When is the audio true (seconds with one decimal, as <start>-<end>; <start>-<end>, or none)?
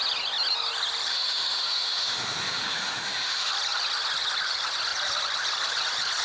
0.0-1.1; 3.5-6.2